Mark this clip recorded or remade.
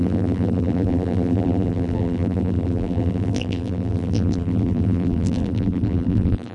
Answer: remade